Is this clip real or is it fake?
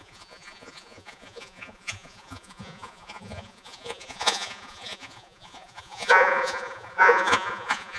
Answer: fake